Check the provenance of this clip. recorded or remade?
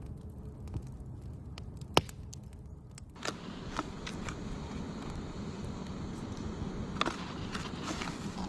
recorded